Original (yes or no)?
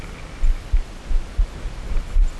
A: yes